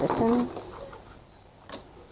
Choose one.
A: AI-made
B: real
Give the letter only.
B